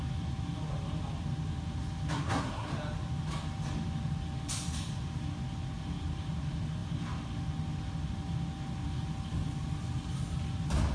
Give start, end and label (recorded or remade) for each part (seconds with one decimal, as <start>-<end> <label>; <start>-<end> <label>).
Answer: 0.0-2.1 recorded; 2.1-2.7 remade; 2.7-10.9 recorded